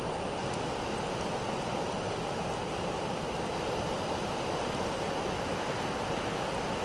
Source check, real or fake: real